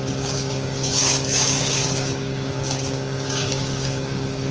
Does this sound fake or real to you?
fake